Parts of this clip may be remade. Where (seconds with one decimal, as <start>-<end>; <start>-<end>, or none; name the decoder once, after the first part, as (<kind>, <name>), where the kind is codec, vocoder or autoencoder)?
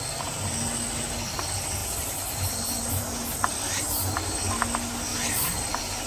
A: none